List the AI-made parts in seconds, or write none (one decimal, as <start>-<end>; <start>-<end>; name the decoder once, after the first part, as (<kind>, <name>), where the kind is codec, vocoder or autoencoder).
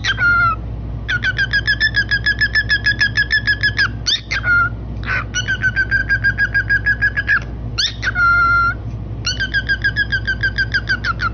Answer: none